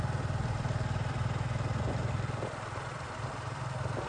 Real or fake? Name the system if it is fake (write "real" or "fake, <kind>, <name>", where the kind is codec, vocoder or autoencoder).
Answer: real